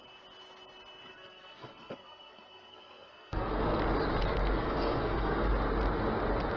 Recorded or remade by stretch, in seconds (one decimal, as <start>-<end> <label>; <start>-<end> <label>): 0.0-1.1 recorded; 1.1-3.8 remade; 3.8-4.4 recorded; 4.4-5.5 remade; 5.5-6.6 recorded